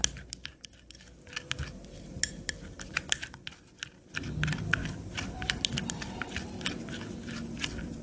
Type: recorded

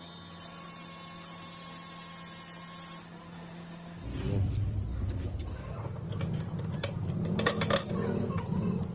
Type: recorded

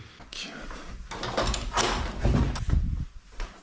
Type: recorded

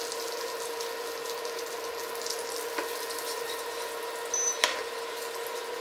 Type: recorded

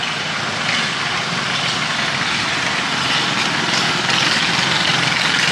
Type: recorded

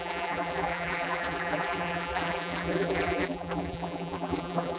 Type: remade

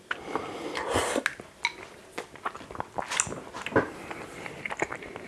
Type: recorded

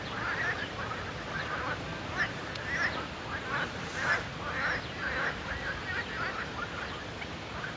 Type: recorded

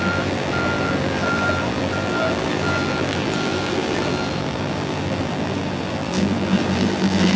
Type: remade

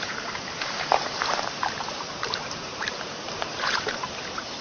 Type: remade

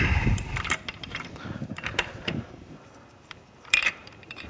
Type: remade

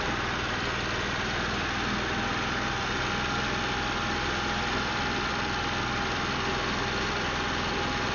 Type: remade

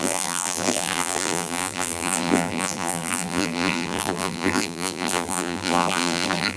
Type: remade